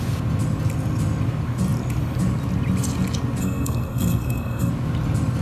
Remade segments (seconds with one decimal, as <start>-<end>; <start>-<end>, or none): 3.4-4.7